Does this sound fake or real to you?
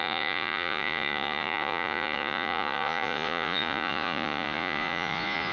fake